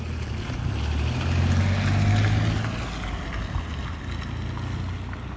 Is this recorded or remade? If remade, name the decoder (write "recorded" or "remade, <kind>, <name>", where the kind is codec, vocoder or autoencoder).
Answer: recorded